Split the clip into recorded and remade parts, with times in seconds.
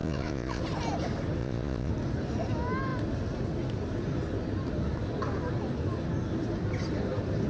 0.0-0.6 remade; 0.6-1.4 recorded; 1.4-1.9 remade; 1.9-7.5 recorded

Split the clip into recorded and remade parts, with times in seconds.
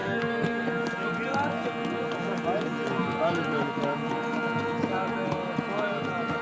0.0-0.6 remade; 0.6-6.4 recorded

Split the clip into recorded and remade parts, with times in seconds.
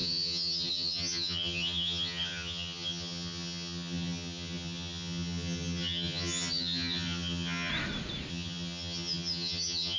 0.0-7.7 remade; 7.7-8.3 recorded; 8.3-10.0 remade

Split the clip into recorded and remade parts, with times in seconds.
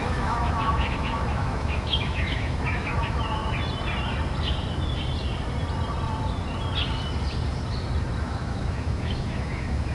0.0-3.4 remade; 3.4-8.2 recorded; 8.2-9.9 remade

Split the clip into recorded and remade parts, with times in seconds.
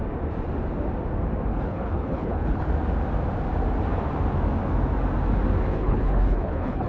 0.0-1.5 recorded; 1.5-2.7 remade; 2.7-5.7 recorded; 5.7-6.9 remade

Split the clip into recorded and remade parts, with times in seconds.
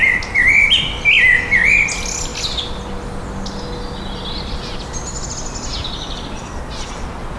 0.0-7.4 recorded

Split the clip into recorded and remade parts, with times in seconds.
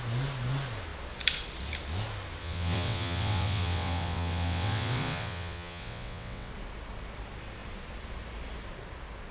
0.0-2.4 recorded; 2.4-6.5 remade; 6.5-9.3 recorded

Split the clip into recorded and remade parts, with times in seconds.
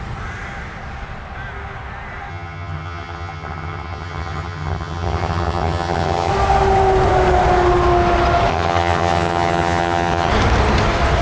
0.0-2.3 recorded; 2.3-6.3 remade; 6.3-8.5 recorded; 8.5-10.3 remade; 10.3-11.2 recorded